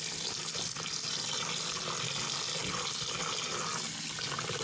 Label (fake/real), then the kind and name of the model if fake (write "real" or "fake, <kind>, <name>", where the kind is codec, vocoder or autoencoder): real